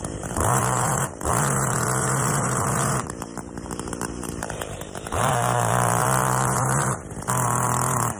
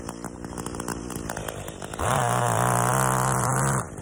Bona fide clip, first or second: second